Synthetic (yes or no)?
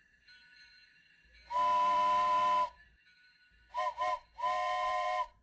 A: yes